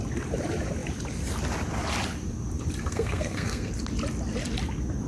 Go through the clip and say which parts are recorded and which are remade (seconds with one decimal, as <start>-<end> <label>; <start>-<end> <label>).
0.0-2.8 recorded; 2.8-3.7 remade; 3.7-5.1 recorded